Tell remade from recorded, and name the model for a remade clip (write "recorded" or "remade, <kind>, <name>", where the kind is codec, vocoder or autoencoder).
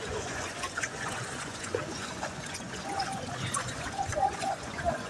remade, vocoder, Vocos